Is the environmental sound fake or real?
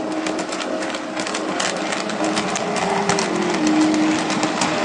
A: real